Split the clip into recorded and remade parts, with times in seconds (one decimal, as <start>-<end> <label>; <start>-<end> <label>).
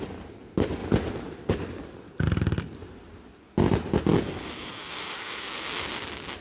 0.0-6.4 recorded